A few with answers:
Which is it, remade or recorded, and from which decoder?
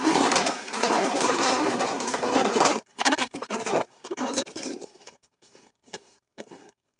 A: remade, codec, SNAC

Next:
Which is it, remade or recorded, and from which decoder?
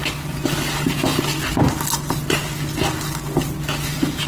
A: recorded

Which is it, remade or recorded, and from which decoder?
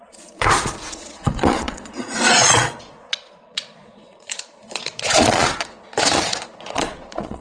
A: remade, vocoder, Vocos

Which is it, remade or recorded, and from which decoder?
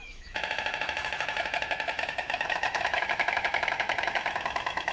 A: remade, autoencoder, DAC-VAE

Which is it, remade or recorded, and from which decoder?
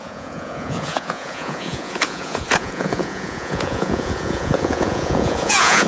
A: remade, vocoder, Vocos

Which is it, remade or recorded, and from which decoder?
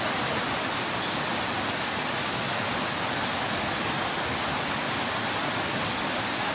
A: recorded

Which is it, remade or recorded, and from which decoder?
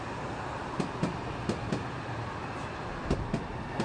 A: recorded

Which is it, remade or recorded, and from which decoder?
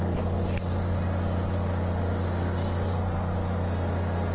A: recorded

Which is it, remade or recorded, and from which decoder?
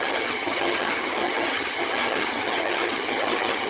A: remade, vocoder, HiFi-GAN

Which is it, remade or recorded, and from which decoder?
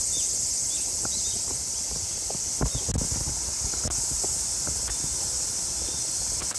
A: recorded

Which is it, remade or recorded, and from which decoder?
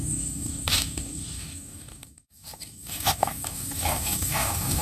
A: remade, codec, DAC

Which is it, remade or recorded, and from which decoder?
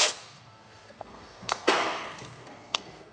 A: remade, codec, SNAC